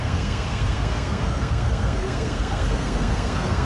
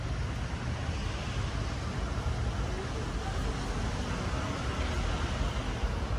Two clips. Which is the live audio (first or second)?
second